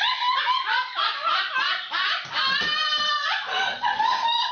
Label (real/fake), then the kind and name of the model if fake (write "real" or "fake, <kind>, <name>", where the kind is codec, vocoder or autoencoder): real